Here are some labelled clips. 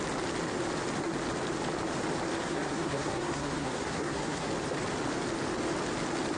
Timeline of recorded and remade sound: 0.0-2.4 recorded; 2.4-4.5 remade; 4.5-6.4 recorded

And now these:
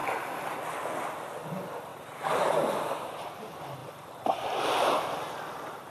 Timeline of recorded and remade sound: 0.0-1.9 recorded; 1.9-3.3 remade; 3.3-3.8 recorded; 3.8-4.6 remade; 4.6-5.9 recorded